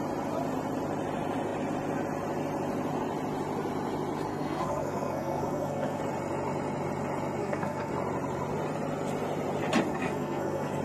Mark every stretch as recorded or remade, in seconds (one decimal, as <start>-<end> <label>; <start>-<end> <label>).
0.0-4.3 recorded; 4.3-6.0 remade; 6.0-7.4 recorded; 7.4-7.9 remade; 7.9-9.9 recorded; 9.9-10.8 remade